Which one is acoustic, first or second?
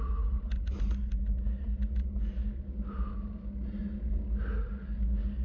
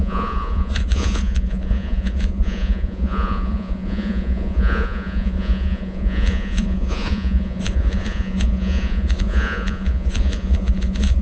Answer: first